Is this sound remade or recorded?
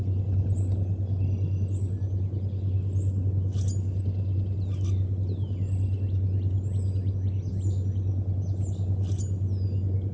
recorded